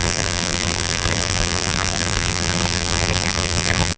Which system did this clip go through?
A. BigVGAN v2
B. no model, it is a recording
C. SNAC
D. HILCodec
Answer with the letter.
A